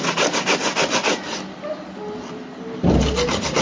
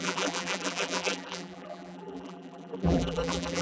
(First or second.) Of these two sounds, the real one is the first